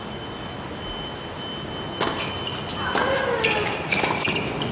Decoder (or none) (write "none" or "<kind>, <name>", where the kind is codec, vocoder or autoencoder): none